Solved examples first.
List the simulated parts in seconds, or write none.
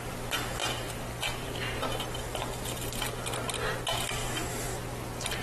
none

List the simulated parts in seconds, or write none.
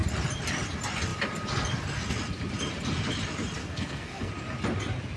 3.6-4.3 (codec, SNAC)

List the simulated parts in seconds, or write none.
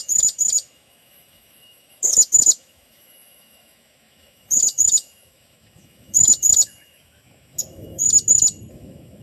0.0-8.0 (autoencoder, DAC-VAE); 8.7-9.2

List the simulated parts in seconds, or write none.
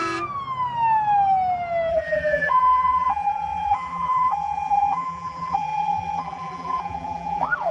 1.9-7.7 (vocoder, BigVGAN v2)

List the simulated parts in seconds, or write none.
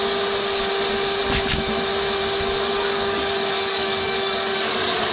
2.9-5.1 (codec, DAC)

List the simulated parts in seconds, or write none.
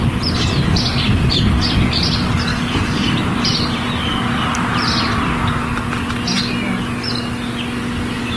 0.9-1.8 (vocoder, BigVGAN v2); 3.5-5.7